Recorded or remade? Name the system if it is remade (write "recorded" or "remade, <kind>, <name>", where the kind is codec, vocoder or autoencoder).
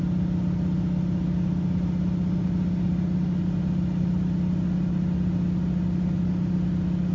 recorded